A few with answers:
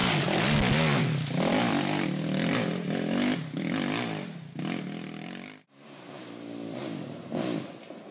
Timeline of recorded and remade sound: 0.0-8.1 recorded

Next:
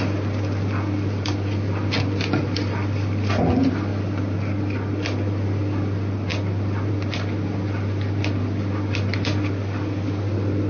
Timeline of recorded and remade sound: 0.0-10.7 recorded

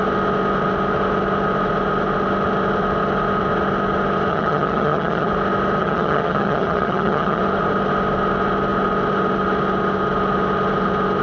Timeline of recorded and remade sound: 0.0-4.3 recorded; 4.3-5.3 remade; 5.3-5.8 recorded; 5.8-7.4 remade; 7.4-11.2 recorded